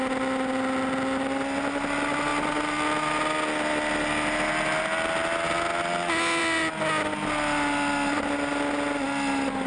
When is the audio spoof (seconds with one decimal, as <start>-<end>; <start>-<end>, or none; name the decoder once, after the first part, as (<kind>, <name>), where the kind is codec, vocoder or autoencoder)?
none